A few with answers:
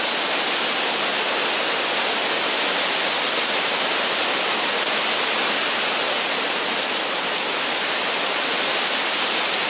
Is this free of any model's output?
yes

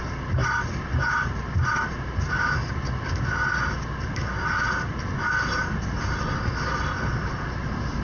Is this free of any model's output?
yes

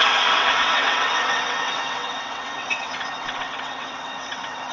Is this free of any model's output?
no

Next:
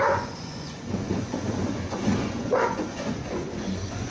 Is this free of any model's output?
no